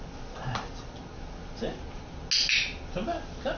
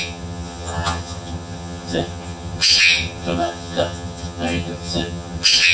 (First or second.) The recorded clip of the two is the first